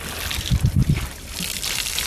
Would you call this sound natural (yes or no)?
no